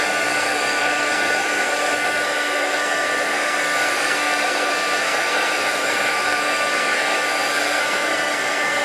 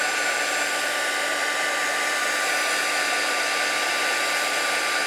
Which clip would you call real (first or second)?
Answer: second